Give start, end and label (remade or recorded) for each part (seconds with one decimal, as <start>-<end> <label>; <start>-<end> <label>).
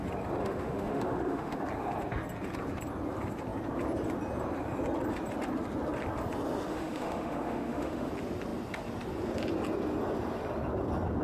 0.0-0.4 recorded; 0.4-1.6 remade; 1.6-6.7 recorded; 6.7-8.1 remade; 8.1-11.2 recorded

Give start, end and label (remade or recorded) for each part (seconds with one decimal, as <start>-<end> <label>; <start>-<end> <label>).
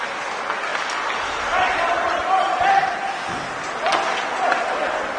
0.0-5.2 recorded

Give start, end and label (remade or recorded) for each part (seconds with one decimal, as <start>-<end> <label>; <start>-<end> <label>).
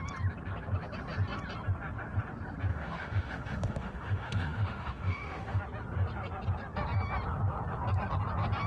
0.0-2.7 recorded; 2.7-5.6 remade; 5.6-8.7 recorded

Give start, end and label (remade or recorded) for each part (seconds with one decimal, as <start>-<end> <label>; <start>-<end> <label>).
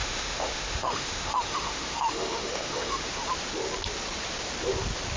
0.0-3.1 remade; 3.1-5.2 recorded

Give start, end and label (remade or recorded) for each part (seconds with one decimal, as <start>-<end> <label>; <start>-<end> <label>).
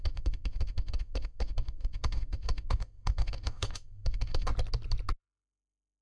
0.0-4.5 remade; 4.5-5.2 recorded; 5.2-6.0 remade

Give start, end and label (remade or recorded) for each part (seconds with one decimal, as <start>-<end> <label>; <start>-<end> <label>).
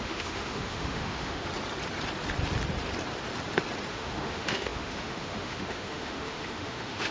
0.0-1.5 remade; 1.5-3.9 recorded; 3.9-7.1 remade